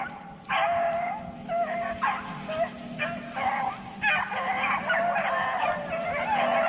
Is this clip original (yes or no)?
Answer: yes